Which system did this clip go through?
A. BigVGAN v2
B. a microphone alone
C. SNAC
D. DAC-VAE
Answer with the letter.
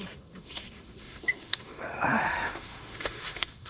D